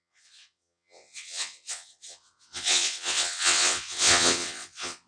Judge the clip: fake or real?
fake